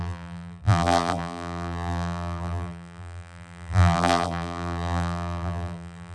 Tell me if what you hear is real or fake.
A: fake